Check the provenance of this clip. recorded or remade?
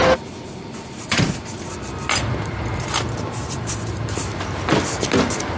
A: recorded